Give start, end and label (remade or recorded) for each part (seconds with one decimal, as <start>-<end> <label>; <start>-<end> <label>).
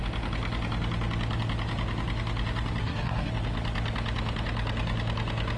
0.0-2.8 recorded; 2.8-3.3 remade; 3.3-5.6 recorded